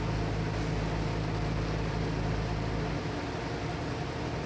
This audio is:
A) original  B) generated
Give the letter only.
A